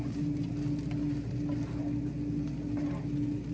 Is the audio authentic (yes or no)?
yes